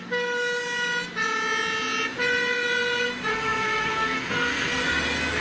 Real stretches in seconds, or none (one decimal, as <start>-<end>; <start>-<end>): 0.0-3.3; 4.8-5.4